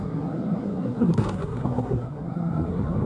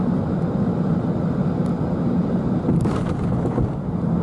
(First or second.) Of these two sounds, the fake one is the first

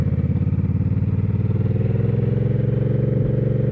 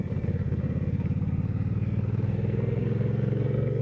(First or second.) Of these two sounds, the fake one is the second